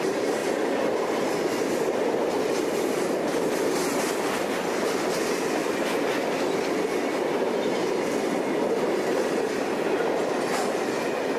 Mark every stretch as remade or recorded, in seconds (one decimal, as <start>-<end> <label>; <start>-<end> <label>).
0.0-11.4 recorded